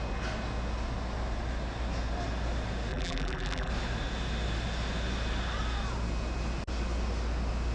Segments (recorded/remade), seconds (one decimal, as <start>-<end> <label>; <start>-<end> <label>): 0.0-2.9 recorded; 2.9-3.7 remade; 3.7-7.7 recorded